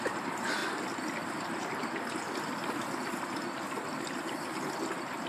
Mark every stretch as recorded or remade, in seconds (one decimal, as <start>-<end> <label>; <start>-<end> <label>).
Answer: 0.0-0.6 remade; 0.6-1.2 recorded; 1.2-1.8 remade; 1.8-5.3 recorded